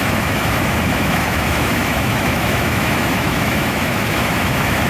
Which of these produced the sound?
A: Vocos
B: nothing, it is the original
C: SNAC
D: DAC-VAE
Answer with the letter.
D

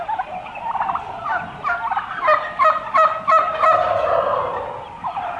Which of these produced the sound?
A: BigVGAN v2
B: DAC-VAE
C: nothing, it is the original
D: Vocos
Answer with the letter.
C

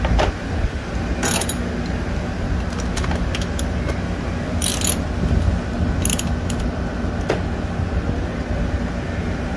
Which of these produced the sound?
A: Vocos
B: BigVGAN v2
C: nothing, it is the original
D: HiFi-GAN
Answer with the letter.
C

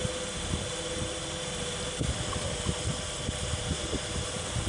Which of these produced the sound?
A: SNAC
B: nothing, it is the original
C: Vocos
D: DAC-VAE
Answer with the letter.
B